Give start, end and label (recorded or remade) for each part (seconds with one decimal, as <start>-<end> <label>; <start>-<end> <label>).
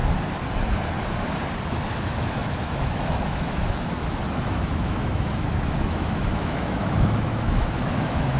0.0-1.9 recorded; 1.9-8.4 remade